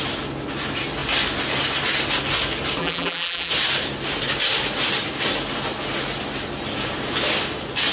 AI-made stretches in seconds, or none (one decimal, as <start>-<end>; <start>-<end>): 2.8-3.5